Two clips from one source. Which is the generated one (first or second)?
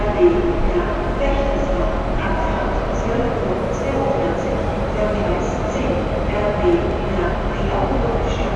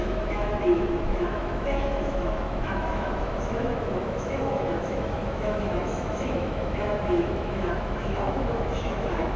second